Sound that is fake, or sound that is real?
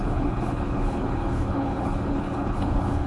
fake